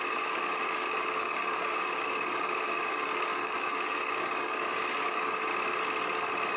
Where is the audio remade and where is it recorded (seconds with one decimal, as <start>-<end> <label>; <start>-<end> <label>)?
0.0-5.5 remade; 5.5-6.0 recorded; 6.0-6.6 remade